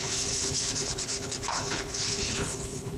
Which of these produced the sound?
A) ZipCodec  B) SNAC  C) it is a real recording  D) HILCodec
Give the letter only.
D